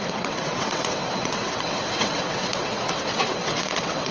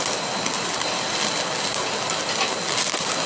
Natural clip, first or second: second